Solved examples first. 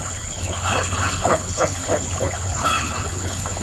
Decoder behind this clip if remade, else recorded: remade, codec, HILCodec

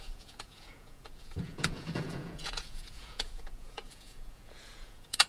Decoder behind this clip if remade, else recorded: remade, vocoder, Vocos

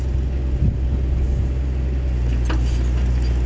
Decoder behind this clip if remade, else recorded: recorded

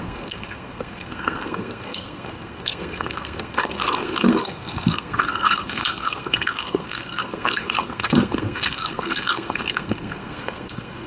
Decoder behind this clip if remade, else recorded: remade, codec, SNAC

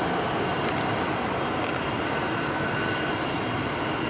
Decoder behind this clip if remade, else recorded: recorded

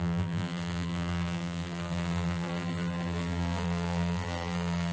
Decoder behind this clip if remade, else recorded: remade, vocoder, BigVGAN v2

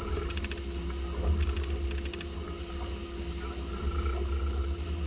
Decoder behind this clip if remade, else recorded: recorded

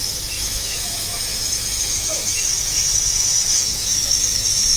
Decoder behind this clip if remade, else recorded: remade, autoencoder, DAC-VAE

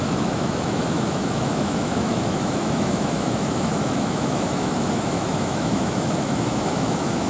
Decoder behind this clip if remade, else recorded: remade, autoencoder, DAC-VAE